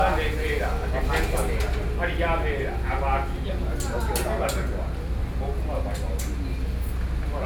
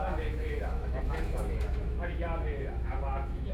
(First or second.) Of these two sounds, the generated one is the second